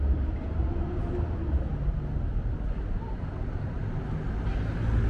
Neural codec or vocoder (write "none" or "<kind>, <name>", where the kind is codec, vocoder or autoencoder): none